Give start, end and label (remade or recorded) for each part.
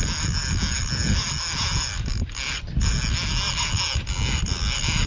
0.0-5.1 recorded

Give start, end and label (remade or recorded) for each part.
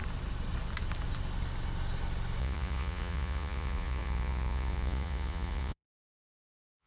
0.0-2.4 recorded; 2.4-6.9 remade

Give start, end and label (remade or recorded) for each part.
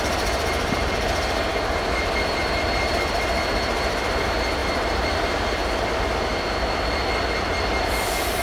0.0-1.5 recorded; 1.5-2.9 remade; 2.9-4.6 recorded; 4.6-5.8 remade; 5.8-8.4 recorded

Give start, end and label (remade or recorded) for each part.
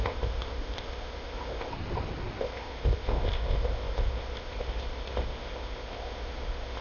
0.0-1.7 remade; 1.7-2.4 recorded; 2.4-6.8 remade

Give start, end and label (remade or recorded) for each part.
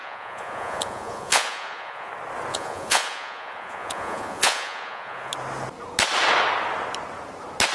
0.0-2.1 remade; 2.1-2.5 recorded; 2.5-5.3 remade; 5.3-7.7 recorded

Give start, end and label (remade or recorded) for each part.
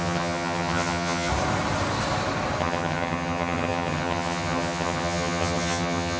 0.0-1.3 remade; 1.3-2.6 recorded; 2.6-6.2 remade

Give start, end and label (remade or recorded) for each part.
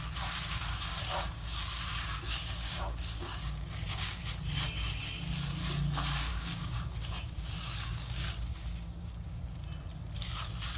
0.0-0.9 recorded; 0.9-4.2 remade; 4.2-6.3 recorded; 6.3-9.4 remade; 9.4-10.8 recorded